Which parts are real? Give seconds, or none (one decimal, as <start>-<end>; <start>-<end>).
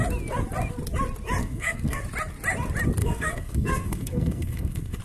0.0-1.4; 2.0-3.0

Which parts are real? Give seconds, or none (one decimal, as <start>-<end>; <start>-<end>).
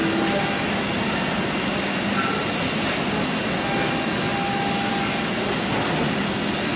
0.0-6.8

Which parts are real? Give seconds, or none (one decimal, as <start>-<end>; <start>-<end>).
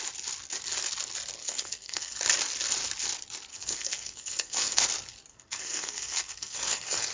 0.0-1.4; 2.2-3.5; 4.8-5.3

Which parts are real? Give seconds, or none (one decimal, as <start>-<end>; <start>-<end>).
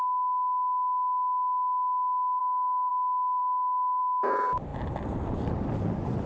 0.0-2.4; 2.9-3.4; 4.0-6.3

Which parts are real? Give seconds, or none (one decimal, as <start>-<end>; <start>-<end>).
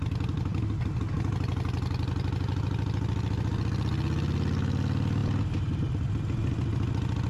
0.0-7.3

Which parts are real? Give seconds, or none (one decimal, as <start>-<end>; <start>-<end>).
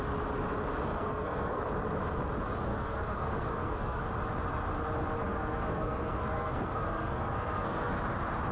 0.0-0.9; 1.6-2.7; 4.0-5.2; 8.0-8.5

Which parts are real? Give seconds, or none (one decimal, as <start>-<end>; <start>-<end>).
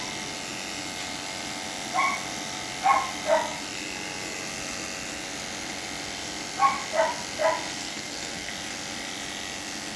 0.0-7.8; 8.5-10.0